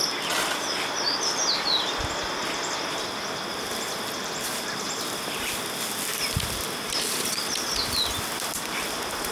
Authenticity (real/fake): real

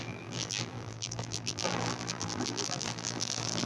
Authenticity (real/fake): fake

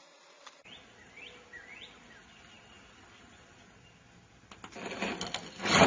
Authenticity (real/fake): real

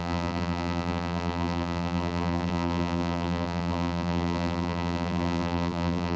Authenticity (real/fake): fake